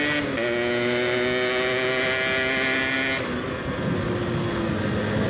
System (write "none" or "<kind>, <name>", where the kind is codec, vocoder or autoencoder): none